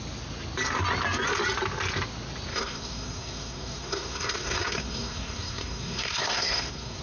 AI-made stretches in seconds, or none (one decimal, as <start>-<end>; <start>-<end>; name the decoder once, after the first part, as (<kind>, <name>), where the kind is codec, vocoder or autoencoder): 2.5-7.0 (codec, SNAC)